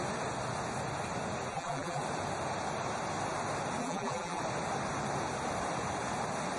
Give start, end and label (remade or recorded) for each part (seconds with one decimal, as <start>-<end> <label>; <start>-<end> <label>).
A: 0.0-1.5 recorded; 1.5-2.0 remade; 2.0-3.8 recorded; 3.8-4.4 remade; 4.4-6.6 recorded